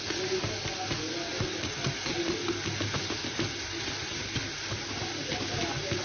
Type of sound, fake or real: real